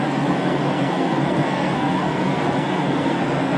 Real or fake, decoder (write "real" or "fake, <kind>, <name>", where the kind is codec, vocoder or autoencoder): fake, codec, SNAC